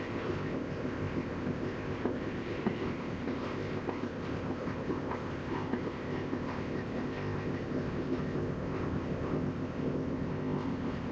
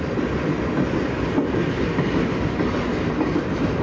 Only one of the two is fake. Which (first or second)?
first